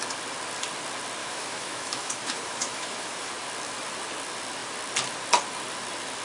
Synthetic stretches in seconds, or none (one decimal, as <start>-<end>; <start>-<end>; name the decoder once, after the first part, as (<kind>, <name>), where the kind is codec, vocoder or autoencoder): 1.2-3.3 (autoencoder, DAC-VAE)